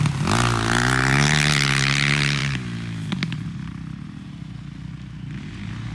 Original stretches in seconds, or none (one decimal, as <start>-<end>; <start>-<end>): 0.0-5.9